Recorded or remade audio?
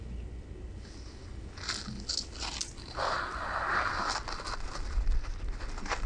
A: recorded